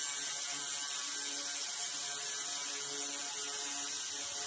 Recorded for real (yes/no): yes